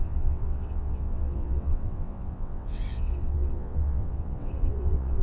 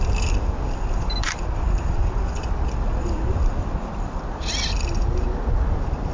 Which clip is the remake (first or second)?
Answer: first